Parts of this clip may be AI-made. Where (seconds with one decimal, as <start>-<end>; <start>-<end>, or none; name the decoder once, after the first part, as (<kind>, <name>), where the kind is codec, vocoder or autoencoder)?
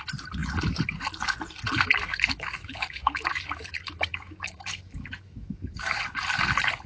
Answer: 2.1-6.0 (autoencoder, DAC-VAE)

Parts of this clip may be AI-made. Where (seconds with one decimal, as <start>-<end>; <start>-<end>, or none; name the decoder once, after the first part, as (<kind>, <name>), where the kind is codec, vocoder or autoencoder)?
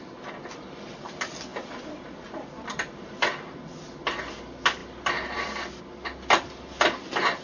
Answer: none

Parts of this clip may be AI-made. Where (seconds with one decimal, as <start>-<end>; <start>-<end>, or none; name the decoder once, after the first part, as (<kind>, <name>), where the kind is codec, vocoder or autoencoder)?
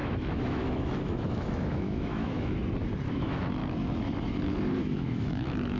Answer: 0.0-2.6 (autoencoder, DAC-VAE); 3.1-3.6; 4.8-5.8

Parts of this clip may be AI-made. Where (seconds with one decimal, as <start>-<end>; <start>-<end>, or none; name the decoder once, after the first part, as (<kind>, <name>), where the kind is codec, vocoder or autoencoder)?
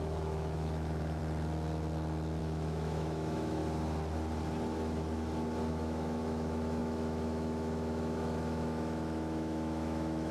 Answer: 0.0-1.2 (autoencoder, DAC-VAE); 2.4-3.6; 5.7-10.3